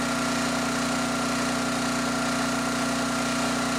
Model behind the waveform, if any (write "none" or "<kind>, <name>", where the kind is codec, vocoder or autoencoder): none